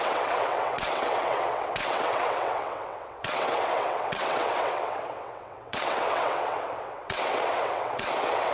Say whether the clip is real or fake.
fake